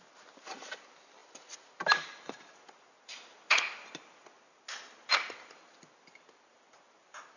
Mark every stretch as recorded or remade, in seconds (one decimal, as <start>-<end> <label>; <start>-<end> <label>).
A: 0.0-7.4 recorded